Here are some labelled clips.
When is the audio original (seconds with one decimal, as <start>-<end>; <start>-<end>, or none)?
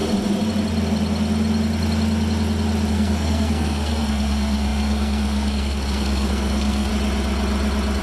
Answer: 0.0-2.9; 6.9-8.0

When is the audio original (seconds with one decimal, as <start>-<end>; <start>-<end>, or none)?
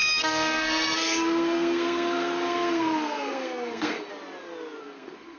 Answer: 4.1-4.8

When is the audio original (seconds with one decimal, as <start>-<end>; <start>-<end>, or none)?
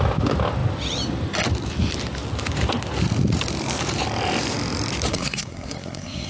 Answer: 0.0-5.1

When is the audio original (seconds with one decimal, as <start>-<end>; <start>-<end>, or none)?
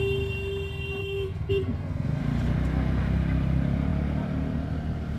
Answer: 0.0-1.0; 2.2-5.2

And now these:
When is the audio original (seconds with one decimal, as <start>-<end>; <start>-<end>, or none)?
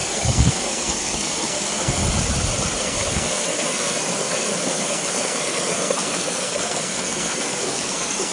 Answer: 2.0-2.8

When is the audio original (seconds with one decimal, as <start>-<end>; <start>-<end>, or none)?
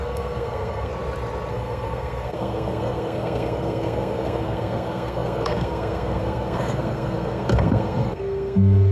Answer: 0.9-1.5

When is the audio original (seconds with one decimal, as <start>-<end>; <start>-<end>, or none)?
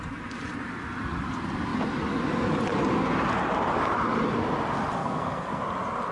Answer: 0.0-5.0; 5.6-6.1